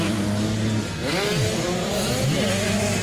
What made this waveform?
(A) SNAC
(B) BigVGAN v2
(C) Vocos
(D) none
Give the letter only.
D